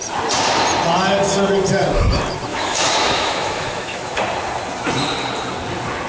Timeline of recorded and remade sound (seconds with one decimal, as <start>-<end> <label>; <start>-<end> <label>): 0.0-2.5 recorded; 2.5-4.2 remade; 4.2-6.1 recorded